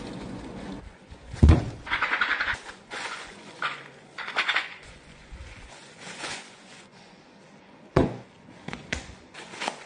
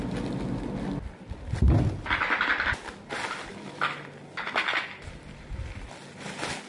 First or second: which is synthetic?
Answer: first